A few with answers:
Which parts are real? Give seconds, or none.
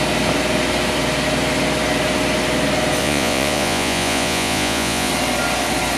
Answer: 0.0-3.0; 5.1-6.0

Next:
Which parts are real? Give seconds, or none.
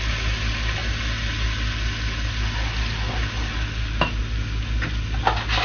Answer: 0.0-5.6